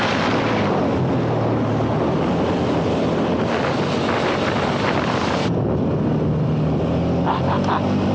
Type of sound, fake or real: real